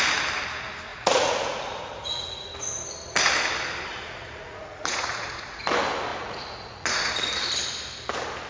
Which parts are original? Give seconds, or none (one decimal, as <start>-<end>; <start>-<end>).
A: 0.0-0.9; 2.5-3.9; 5.6-6.1; 7.1-8.5